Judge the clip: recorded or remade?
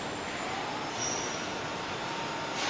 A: recorded